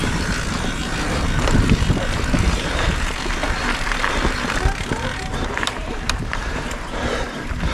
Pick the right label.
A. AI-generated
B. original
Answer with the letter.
A